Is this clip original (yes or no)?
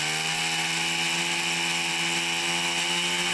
yes